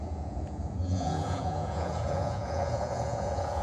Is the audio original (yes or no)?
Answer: no